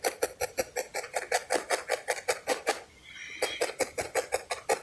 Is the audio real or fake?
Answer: real